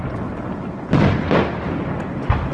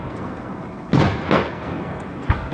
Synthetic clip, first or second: second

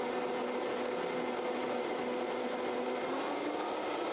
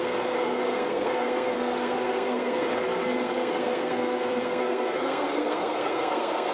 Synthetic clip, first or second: second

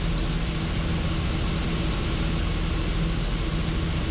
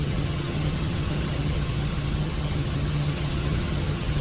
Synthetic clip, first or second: second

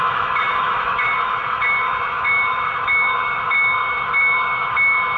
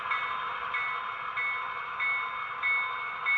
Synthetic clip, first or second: first